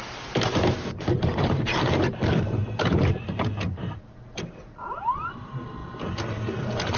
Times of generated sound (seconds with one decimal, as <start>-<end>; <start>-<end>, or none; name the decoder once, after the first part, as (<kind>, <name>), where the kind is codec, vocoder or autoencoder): 0.0-5.8 (vocoder, BigVGAN v2); 6.6-7.0